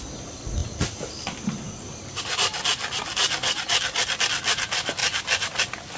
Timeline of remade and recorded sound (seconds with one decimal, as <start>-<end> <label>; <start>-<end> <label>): 0.0-0.6 recorded; 0.6-4.2 remade; 4.2-5.0 recorded; 5.0-6.0 remade